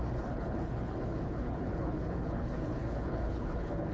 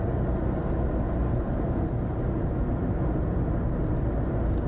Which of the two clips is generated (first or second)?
first